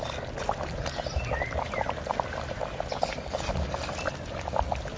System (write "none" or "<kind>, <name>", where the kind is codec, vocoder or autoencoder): none